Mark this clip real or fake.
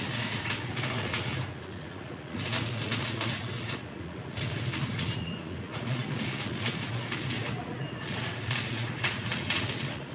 fake